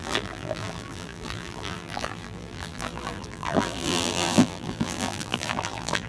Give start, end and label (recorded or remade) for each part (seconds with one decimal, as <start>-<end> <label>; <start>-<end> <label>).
0.0-6.1 remade